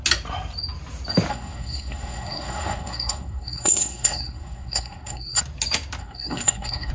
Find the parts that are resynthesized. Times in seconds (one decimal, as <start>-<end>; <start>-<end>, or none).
1.3-5.4; 6.0-6.9

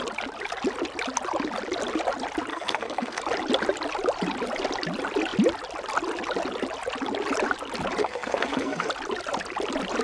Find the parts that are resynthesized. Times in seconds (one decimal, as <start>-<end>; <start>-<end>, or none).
2.5-3.2; 8.0-8.9

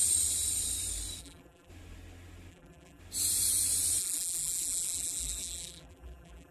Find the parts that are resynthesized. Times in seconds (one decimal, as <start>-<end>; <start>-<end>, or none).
1.2-1.7; 2.5-3.0; 4.0-6.5

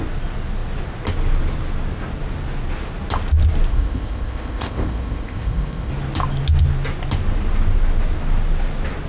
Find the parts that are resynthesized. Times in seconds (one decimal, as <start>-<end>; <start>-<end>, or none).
3.7-5.9

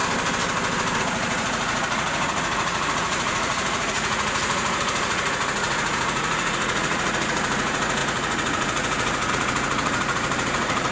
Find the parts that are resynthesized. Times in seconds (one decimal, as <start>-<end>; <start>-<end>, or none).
1.0-10.9

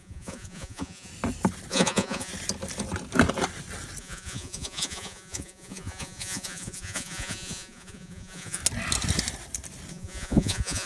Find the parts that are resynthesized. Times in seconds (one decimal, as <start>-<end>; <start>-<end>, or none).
0.0-1.1; 1.7-2.3; 4.0-8.6; 9.9-10.9